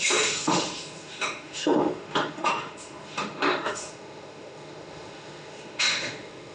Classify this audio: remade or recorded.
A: remade